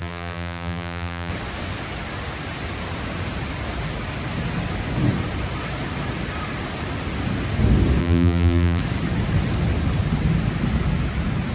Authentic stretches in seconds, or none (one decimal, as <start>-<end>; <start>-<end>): 1.3-8.0; 8.8-11.5